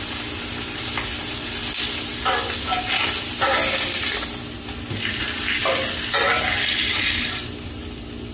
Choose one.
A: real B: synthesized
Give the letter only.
A